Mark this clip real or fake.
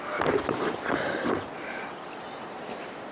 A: real